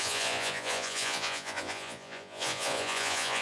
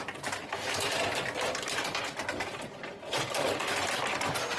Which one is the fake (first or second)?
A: first